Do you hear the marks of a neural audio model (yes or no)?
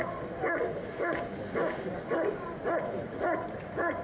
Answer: no